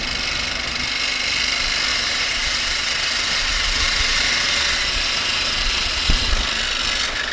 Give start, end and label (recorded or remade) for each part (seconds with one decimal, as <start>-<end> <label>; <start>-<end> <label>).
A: 0.0-1.9 recorded; 1.9-6.3 remade; 6.3-7.3 recorded